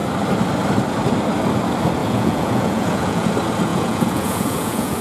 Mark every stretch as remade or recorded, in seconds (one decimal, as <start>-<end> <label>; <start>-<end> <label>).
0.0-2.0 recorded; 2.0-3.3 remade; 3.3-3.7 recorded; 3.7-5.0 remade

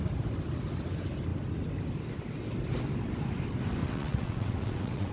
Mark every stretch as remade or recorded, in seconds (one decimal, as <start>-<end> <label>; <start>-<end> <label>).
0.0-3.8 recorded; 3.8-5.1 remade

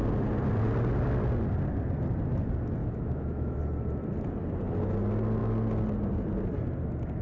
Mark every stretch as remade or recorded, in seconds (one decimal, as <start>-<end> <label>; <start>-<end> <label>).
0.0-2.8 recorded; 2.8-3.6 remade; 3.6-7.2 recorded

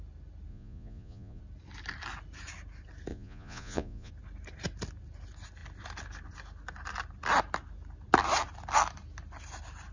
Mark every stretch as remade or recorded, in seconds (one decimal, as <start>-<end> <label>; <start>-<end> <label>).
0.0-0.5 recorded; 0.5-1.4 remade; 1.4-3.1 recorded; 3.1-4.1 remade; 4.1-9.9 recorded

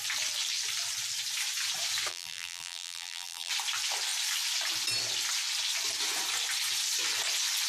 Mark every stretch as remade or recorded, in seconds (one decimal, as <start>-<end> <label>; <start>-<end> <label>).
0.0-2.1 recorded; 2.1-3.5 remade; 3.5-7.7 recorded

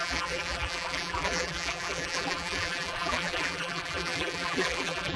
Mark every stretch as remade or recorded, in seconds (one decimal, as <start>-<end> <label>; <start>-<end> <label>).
0.0-5.2 remade

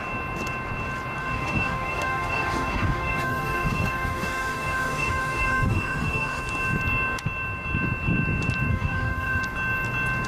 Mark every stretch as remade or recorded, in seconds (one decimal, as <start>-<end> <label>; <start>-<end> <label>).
0.0-1.2 recorded; 1.2-6.4 remade; 6.4-8.7 recorded; 8.7-9.4 remade; 9.4-10.3 recorded